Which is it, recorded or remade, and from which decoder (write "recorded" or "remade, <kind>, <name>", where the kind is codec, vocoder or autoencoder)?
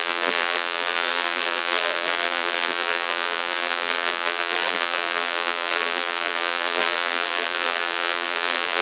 remade, vocoder, BigVGAN v2